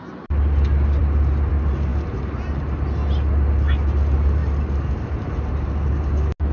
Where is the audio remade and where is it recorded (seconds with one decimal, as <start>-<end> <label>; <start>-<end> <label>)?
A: 0.0-6.5 recorded